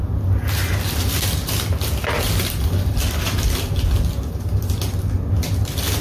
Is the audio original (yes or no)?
yes